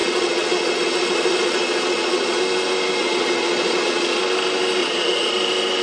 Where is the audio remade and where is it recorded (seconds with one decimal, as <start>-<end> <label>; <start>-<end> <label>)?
0.0-2.4 remade; 2.4-3.0 recorded; 3.0-4.2 remade; 4.2-4.8 recorded; 4.8-5.3 remade; 5.3-5.8 recorded